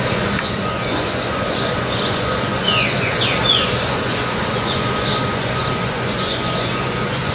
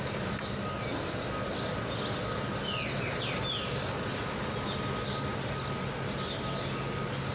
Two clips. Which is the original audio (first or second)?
second